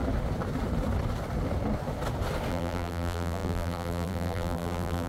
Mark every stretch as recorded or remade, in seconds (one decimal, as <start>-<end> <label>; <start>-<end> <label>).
0.0-2.5 recorded; 2.5-5.1 remade